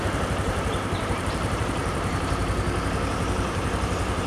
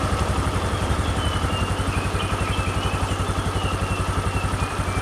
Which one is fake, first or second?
first